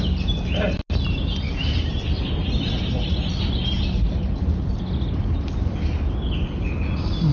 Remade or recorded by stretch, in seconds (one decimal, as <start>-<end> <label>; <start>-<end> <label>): 0.0-7.3 recorded